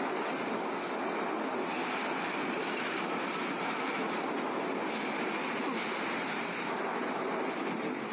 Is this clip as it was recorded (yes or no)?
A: yes